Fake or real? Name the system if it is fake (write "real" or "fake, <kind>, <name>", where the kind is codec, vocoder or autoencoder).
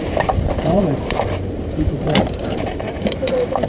fake, vocoder, BigVGAN v2